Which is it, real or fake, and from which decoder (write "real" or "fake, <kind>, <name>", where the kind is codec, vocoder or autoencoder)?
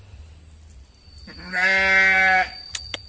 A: real